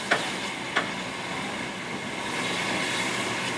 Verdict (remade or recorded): recorded